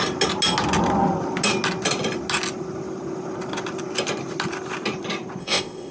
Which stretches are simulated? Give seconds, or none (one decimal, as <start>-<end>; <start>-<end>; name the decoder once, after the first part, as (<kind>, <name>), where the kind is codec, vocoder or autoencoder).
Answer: 5.4-5.9 (codec, ZipCodec)